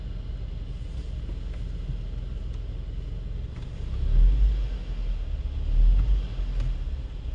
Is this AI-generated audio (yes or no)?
no